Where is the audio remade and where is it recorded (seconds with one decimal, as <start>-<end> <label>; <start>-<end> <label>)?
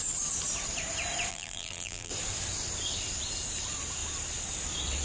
0.0-1.3 recorded; 1.3-2.1 remade; 2.1-5.0 recorded